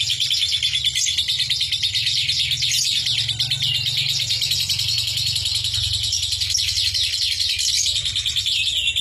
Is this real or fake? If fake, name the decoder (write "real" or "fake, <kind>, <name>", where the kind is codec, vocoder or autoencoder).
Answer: real